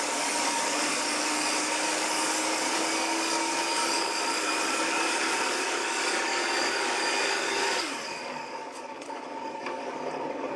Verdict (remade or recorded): remade